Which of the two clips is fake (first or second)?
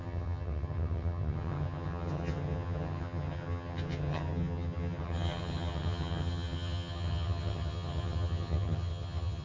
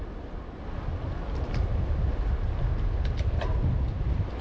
first